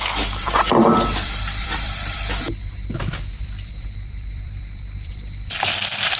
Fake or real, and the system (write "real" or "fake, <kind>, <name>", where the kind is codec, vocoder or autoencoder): fake, vocoder, BigVGAN v2